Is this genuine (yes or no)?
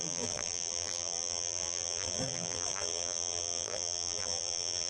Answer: no